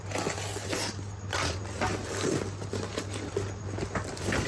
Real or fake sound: real